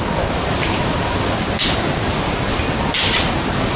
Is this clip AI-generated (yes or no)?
no